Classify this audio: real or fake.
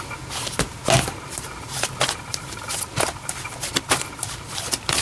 real